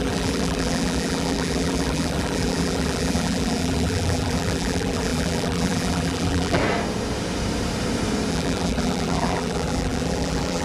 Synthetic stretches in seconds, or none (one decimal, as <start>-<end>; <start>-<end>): 0.0-6.6; 8.3-10.6